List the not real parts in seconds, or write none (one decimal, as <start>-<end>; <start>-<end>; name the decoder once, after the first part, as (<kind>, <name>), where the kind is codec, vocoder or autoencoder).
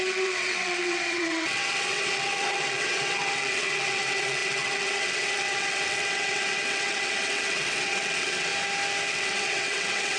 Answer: 0.0-8.5 (vocoder, WaveNeXt); 9.1-10.2